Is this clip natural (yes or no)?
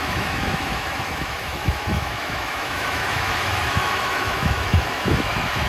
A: no